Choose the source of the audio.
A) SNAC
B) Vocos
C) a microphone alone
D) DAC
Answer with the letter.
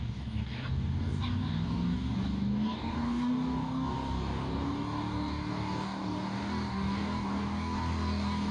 D